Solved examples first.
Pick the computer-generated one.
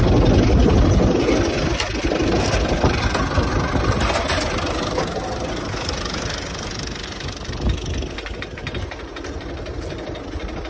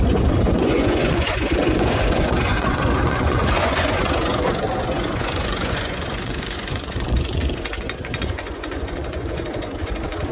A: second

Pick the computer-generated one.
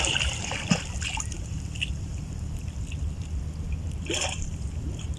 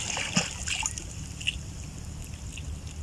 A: first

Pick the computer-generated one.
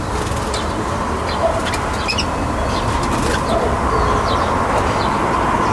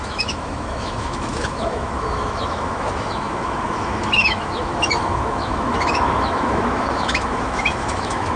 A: second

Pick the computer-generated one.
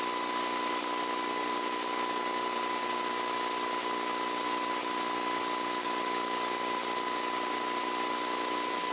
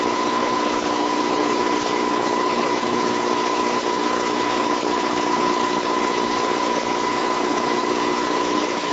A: second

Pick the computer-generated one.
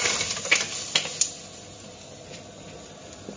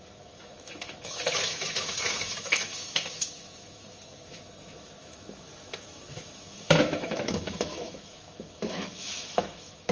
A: second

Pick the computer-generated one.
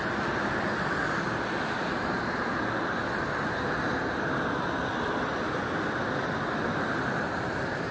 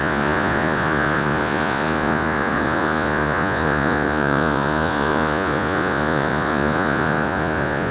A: second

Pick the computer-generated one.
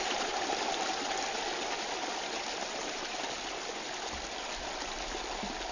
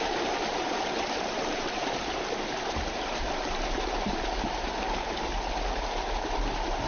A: second